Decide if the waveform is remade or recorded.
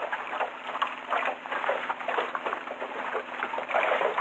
recorded